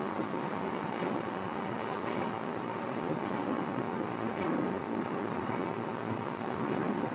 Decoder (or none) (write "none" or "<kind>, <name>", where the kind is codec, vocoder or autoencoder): vocoder, Vocos